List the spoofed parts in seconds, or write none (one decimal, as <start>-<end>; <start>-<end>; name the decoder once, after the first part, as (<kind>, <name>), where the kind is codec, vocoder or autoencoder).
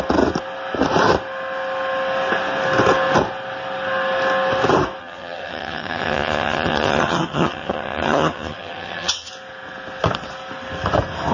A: 5.0-9.3 (vocoder, HiFi-GAN)